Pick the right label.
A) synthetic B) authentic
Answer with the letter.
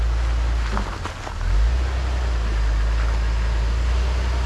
B